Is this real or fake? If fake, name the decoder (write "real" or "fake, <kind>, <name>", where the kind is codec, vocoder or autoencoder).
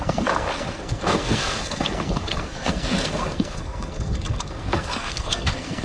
fake, codec, SNAC